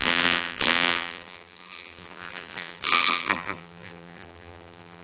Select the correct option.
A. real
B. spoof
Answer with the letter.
B